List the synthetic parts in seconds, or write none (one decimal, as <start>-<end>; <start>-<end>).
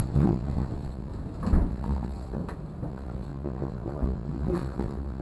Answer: 0.0-1.1; 1.7-2.4; 2.9-5.2